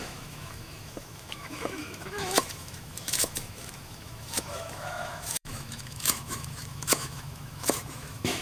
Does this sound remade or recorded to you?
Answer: remade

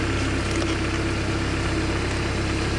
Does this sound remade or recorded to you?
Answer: recorded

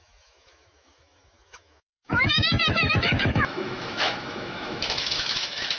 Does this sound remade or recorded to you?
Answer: remade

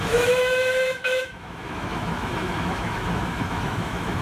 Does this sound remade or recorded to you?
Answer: remade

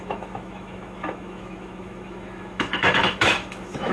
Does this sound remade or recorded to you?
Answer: remade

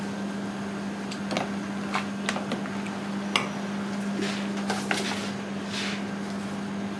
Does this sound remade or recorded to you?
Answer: recorded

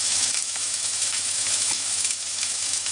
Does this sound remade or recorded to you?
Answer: remade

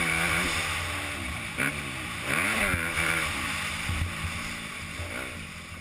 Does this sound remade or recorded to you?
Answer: recorded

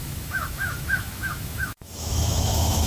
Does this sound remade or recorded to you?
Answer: remade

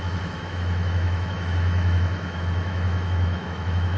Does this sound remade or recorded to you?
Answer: remade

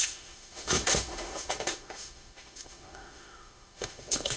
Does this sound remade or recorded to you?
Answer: remade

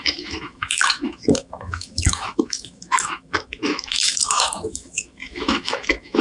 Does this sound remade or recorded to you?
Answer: remade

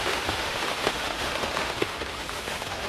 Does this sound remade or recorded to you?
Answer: remade